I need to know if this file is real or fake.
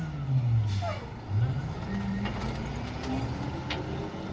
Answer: real